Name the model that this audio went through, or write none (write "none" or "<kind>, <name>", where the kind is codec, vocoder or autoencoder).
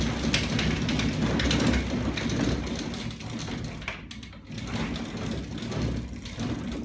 none